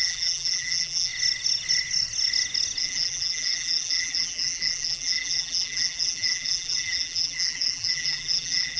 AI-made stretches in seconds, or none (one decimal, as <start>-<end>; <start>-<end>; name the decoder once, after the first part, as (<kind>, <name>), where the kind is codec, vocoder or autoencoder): 0.0-1.1 (vocoder, BigVGAN v2); 2.8-8.8

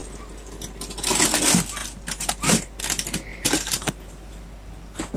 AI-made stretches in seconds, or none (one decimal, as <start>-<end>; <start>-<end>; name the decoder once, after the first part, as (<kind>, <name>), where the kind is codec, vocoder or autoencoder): 1.8-2.8 (vocoder, BigVGAN v2); 3.3-4.3

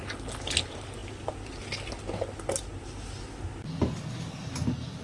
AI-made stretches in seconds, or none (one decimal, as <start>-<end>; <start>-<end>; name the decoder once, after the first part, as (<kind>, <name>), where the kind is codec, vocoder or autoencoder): none

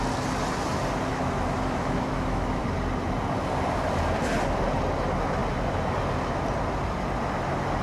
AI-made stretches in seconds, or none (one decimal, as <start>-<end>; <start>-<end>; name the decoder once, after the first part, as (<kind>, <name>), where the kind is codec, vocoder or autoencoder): 1.1-2.6 (autoencoder, DAC-VAE)